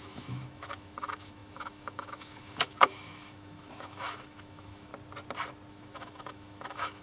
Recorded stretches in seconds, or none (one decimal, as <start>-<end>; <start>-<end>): 4.9-5.7